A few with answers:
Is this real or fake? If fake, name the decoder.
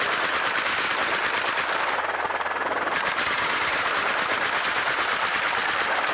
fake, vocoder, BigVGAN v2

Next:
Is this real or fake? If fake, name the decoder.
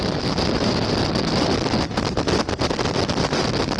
real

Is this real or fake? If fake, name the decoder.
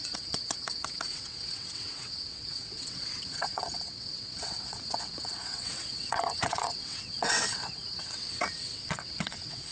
fake, vocoder, WaveNeXt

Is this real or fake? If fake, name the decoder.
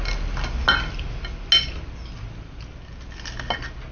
real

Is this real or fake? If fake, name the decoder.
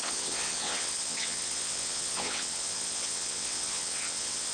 fake, vocoder, WaveNeXt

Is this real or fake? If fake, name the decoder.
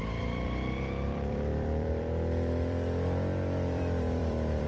fake, vocoder, BigVGAN v2